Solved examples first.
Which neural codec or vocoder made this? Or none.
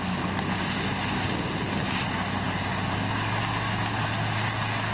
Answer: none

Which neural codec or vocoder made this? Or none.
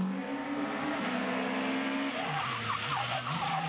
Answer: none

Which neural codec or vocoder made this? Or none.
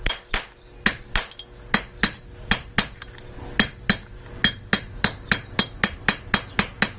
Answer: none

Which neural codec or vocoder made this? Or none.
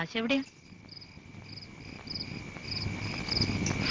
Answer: none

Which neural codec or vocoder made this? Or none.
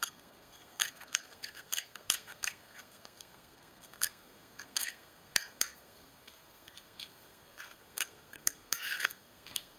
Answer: codec, SNAC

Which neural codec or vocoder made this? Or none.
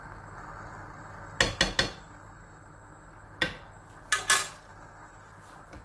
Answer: none